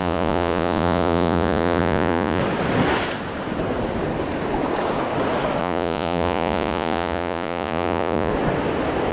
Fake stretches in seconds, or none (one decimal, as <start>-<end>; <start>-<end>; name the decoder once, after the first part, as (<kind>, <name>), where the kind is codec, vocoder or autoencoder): 0.0-2.4 (vocoder, Vocos); 5.6-8.3